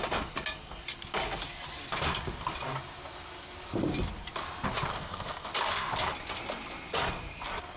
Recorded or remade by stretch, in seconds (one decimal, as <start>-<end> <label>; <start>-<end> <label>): 0.0-4.9 recorded; 4.9-5.5 remade; 5.5-7.8 recorded